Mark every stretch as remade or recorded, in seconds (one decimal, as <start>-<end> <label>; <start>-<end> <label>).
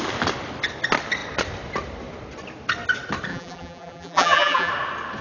0.0-3.3 recorded; 3.3-4.7 remade; 4.7-5.2 recorded